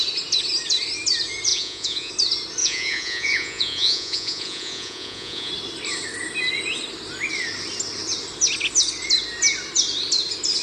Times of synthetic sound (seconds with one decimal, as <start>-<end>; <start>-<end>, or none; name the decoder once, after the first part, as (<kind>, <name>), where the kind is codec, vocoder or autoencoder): 1.5-2.1 (vocoder, Vocos); 2.6-5.5